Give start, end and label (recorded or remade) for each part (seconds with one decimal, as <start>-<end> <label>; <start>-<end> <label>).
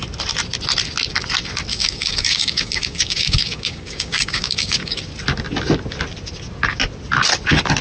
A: 0.0-1.7 recorded; 1.7-5.0 remade; 5.0-7.8 recorded